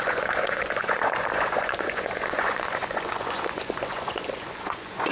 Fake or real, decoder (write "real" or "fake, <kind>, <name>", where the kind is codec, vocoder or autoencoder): fake, vocoder, Vocos